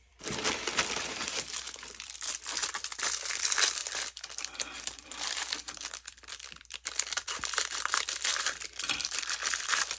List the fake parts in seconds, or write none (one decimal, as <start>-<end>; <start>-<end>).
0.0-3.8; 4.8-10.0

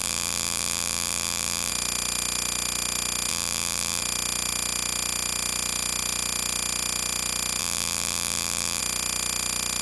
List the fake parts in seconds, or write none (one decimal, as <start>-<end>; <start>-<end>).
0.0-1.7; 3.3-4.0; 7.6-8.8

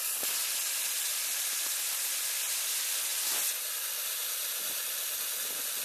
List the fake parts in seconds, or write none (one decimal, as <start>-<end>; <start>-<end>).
none

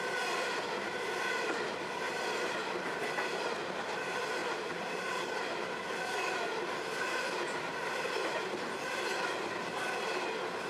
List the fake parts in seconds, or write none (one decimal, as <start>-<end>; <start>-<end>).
2.6-3.1; 4.4-5.4

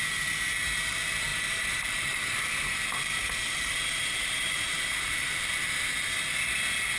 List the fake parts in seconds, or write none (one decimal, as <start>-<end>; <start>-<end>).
1.3-5.5

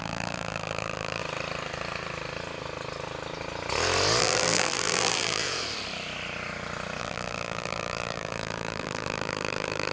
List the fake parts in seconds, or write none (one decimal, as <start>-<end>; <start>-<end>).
0.0-1.2; 4.2-5.4; 7.0-9.9

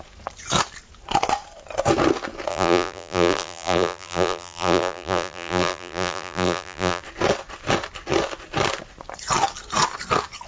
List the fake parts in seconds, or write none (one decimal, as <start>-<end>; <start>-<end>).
2.5-7.0